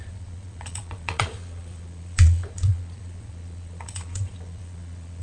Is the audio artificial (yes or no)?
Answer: yes